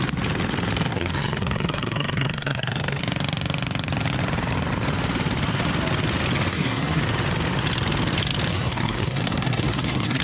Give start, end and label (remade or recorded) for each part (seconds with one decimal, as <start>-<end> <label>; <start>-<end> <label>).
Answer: 0.0-0.9 recorded; 0.9-3.0 remade; 3.0-6.5 recorded; 6.5-7.0 remade; 7.0-8.5 recorded; 8.5-10.2 remade